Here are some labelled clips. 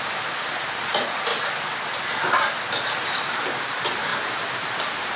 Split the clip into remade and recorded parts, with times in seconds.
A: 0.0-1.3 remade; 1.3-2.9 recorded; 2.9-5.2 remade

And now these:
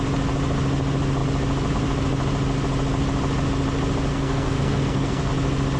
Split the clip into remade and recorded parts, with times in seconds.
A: 0.0-4.1 recorded; 4.1-5.3 remade; 5.3-5.8 recorded

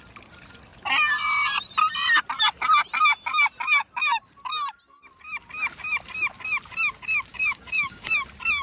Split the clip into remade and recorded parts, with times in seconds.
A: 0.0-7.3 recorded; 7.3-8.1 remade; 8.1-8.6 recorded

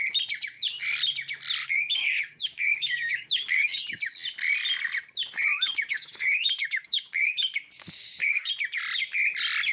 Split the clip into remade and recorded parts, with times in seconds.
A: 0.0-1.6 recorded; 1.6-4.0 remade; 4.0-5.5 recorded; 5.5-8.5 remade; 8.5-9.7 recorded

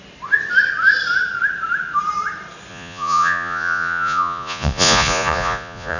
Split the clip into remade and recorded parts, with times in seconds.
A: 0.0-2.7 recorded; 2.7-6.0 remade

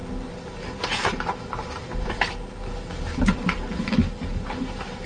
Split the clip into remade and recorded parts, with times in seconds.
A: 0.0-5.1 recorded